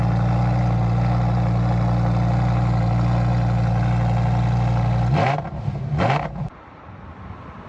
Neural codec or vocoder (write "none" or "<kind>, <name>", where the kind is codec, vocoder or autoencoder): none